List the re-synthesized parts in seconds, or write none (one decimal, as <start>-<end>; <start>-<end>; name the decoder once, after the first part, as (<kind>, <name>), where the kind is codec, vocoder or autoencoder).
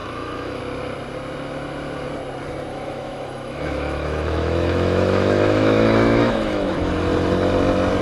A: 0.0-0.6 (autoencoder, DAC-VAE); 2.7-6.9